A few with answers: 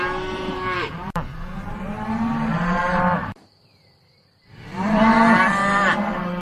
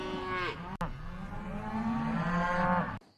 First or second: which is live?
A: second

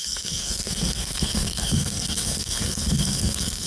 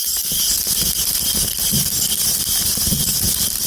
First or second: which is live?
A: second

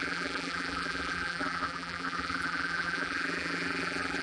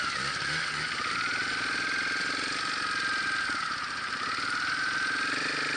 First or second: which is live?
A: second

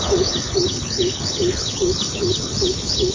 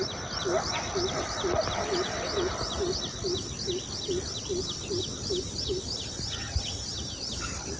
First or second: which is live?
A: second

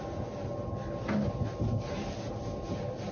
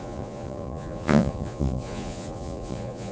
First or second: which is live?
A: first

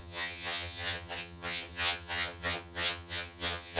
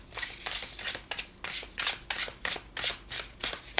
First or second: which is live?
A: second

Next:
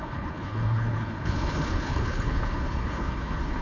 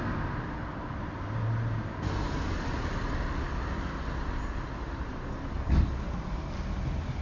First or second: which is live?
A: second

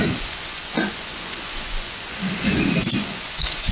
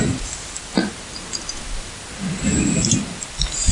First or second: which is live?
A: second